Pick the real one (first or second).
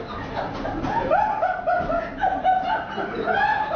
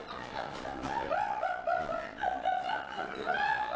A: first